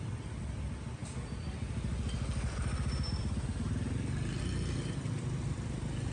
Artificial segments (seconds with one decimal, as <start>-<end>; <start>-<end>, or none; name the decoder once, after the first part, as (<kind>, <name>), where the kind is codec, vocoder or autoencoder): none